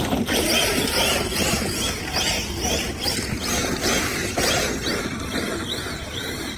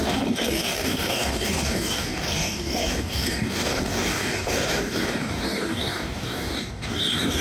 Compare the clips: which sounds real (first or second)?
first